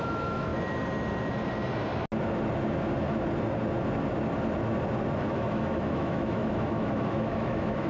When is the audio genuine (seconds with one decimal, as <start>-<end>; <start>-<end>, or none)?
0.5-5.2